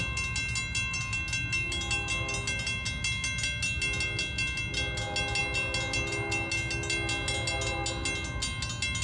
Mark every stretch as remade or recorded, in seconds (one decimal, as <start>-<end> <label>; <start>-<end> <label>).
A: 0.0-9.0 recorded